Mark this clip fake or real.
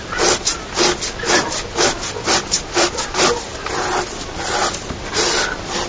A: real